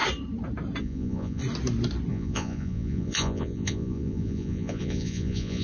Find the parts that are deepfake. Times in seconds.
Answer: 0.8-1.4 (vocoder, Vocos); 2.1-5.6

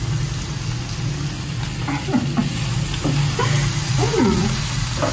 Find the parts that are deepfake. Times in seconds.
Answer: 3.8-4.6 (vocoder, Vocos)

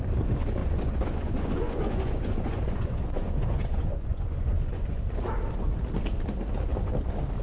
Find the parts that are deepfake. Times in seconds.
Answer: 0.6-5.0 (vocoder, Vocos)

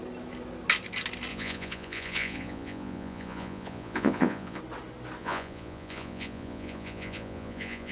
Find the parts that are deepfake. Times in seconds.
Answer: 1.3-4.6 (vocoder, Vocos); 5.2-7.9